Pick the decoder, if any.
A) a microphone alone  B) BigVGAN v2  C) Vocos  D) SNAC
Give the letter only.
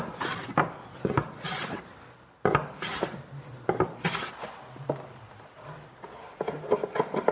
A